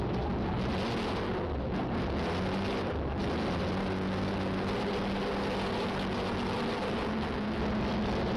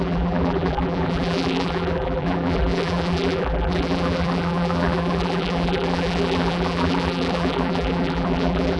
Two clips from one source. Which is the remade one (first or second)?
second